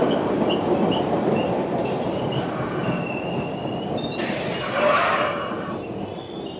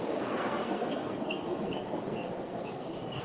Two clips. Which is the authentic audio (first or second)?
first